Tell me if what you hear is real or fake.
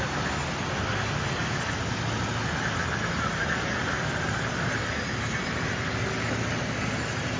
real